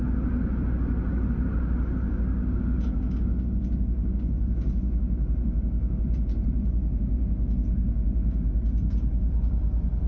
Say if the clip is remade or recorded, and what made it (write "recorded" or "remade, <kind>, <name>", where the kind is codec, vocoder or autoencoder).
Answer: recorded